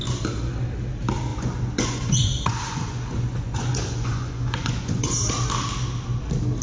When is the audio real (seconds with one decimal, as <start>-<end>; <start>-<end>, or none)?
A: 0.0-1.3; 5.3-6.6